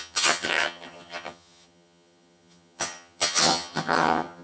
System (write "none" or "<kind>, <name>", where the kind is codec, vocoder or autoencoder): vocoder, HiFi-GAN